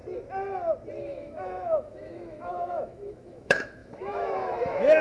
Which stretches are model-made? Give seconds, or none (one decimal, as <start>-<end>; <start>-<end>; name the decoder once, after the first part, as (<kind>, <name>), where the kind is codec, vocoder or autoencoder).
1.0-5.0 (autoencoder, DAC-VAE)